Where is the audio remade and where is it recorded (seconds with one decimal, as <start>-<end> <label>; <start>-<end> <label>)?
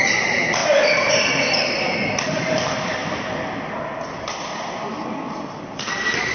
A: 0.0-0.6 recorded; 0.6-1.1 remade; 1.1-6.3 recorded